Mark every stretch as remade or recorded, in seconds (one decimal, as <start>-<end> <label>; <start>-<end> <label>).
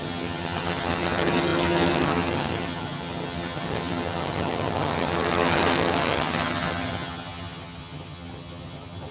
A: 0.0-9.1 remade